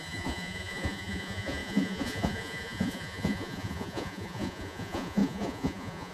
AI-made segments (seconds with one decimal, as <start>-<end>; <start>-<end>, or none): 0.0-6.1